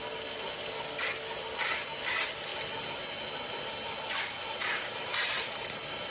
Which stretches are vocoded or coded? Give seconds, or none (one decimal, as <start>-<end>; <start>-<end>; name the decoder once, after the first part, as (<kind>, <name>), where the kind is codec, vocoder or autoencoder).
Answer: none